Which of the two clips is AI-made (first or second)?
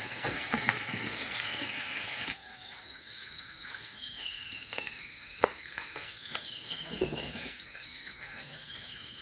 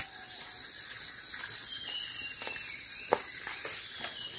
first